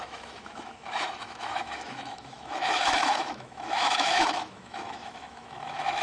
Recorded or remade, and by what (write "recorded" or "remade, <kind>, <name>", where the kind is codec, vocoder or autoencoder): remade, autoencoder, DAC-VAE